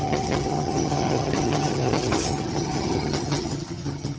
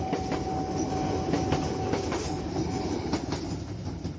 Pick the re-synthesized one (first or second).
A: first